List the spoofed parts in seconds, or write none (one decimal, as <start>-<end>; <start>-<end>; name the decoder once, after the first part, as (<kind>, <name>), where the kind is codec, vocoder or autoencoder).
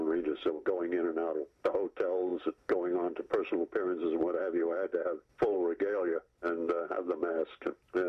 6.3-7.3 (vocoder, BigVGAN v2)